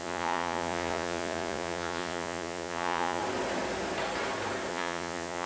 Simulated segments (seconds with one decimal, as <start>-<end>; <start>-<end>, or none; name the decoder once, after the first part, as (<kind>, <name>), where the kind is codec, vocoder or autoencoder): 0.0-3.2 (vocoder, Vocos); 4.7-5.5